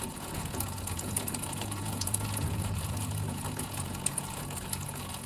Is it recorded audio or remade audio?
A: remade